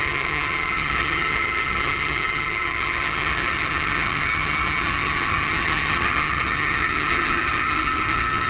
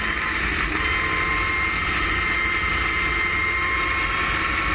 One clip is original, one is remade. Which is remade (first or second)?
first